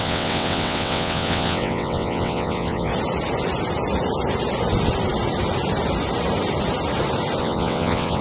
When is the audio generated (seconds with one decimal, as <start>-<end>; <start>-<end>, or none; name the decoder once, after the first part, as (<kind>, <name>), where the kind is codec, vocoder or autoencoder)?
0.0-2.9 (vocoder, WaveNeXt); 7.4-8.2